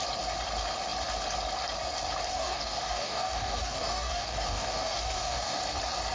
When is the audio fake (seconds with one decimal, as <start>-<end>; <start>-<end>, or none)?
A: 2.3-5.6